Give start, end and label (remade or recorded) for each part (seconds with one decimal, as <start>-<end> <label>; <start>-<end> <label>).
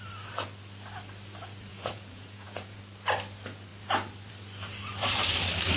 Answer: 0.0-1.7 recorded; 1.7-2.8 remade; 2.8-5.8 recorded